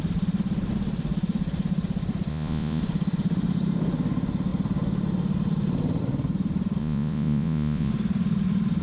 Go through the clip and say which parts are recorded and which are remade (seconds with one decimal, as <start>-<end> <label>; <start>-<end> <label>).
0.0-2.3 recorded; 2.3-2.8 remade; 2.8-6.8 recorded; 6.8-7.9 remade; 7.9-8.8 recorded